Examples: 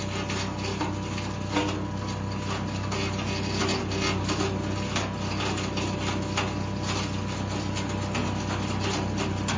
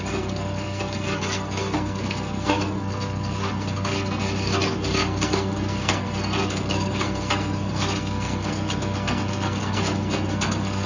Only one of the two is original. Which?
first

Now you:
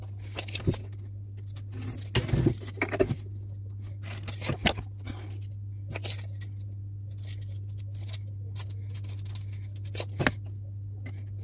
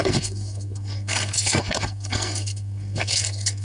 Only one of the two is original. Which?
first